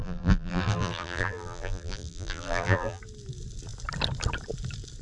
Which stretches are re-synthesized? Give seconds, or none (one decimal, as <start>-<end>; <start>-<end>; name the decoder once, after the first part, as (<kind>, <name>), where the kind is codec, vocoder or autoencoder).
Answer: 0.0-3.0 (vocoder, BigVGAN v2)

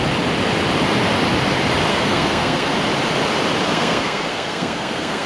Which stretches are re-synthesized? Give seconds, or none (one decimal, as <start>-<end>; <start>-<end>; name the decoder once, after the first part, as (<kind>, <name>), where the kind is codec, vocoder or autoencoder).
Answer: 1.9-2.7 (codec, SNAC); 3.7-5.3

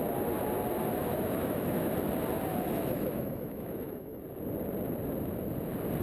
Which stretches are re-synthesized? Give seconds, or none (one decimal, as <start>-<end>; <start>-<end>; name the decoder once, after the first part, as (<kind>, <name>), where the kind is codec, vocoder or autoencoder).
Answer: 1.0-1.9 (autoencoder, DAC-VAE); 2.5-4.2

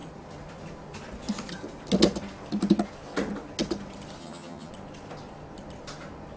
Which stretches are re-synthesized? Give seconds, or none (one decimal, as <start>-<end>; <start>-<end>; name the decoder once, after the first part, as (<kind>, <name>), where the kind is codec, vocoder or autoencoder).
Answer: 4.2-4.7 (vocoder, HiFi-GAN)

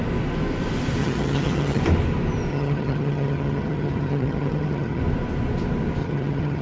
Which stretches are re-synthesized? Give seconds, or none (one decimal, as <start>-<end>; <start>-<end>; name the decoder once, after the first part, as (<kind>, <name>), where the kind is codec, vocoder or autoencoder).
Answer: 1.0-1.8 (vocoder, HiFi-GAN); 2.5-5.0; 6.0-6.6

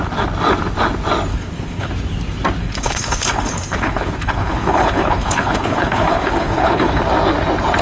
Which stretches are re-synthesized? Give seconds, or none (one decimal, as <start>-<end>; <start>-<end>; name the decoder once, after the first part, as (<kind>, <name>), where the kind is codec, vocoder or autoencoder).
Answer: 1.3-1.9 (codec, HILCodec); 2.6-7.0

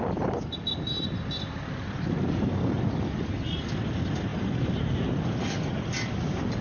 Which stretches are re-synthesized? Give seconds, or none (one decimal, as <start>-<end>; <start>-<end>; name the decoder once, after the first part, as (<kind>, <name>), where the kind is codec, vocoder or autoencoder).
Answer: none